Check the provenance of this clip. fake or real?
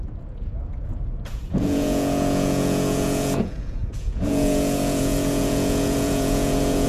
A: fake